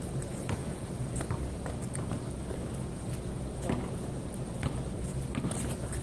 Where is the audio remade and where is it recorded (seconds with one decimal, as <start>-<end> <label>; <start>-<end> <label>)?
0.0-0.6 recorded; 0.6-1.2 remade; 1.2-6.0 recorded